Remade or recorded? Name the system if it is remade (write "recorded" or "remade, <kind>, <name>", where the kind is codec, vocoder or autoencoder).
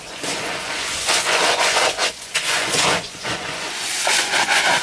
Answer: remade, vocoder, Vocos